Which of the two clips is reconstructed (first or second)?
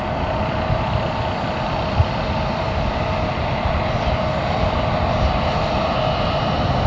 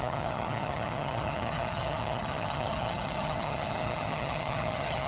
second